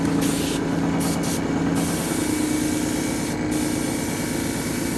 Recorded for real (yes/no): yes